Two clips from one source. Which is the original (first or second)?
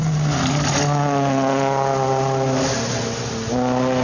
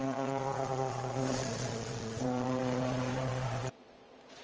first